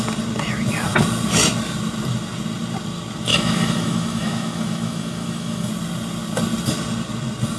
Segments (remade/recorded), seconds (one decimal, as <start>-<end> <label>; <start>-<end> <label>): 0.0-3.3 recorded; 3.3-5.7 remade; 5.7-7.6 recorded